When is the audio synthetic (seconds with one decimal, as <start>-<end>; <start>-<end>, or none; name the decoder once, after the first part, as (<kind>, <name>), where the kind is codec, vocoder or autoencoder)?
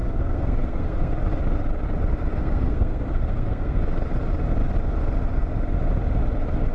0.0-1.1 (codec, SNAC); 2.4-3.8